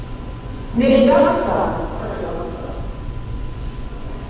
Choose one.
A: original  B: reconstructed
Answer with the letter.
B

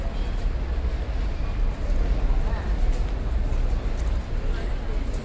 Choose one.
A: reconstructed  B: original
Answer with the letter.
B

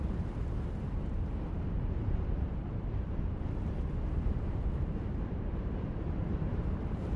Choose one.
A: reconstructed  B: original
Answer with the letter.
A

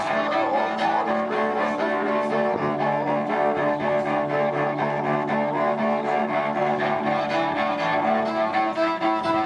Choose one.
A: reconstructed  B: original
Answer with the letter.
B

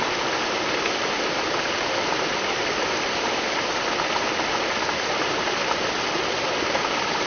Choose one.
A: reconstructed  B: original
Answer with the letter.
B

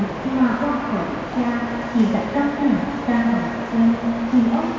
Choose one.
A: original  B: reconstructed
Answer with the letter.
A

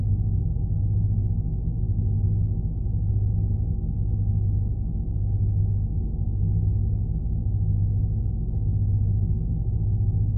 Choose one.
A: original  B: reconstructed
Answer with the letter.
B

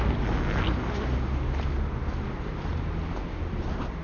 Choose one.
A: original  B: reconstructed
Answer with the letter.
A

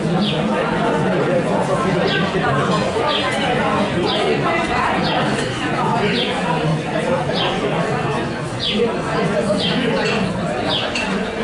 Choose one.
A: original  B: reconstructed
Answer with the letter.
B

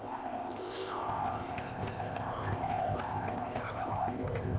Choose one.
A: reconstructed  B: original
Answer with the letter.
A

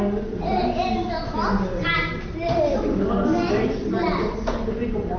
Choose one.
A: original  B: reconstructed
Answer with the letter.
A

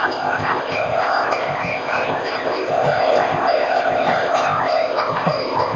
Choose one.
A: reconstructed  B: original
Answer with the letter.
A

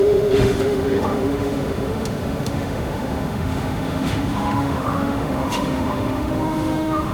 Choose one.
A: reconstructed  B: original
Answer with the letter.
A